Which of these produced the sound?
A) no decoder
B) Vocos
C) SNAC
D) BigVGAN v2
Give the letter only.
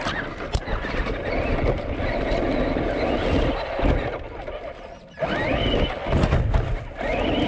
A